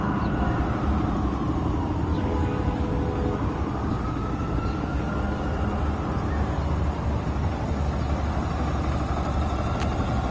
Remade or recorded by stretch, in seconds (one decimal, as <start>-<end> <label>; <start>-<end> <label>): 0.0-2.1 recorded; 2.1-5.4 remade; 5.4-10.3 recorded